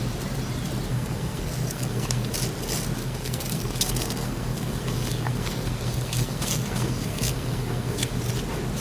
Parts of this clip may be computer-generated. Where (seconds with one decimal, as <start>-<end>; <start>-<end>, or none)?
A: 0.9-2.3; 3.0-8.2